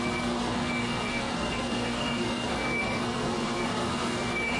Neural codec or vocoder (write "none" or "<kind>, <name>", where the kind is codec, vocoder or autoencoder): codec, SNAC